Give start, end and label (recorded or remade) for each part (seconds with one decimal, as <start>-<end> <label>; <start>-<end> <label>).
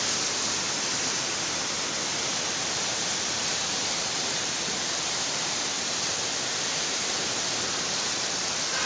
0.0-2.1 recorded; 2.1-6.5 remade; 6.5-8.9 recorded